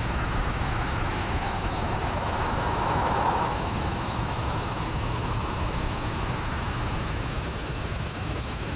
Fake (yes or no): yes